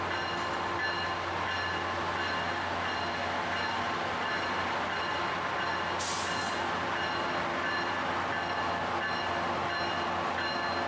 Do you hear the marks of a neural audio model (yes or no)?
no